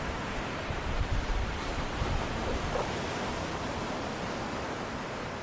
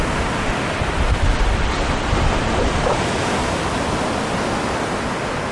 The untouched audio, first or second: second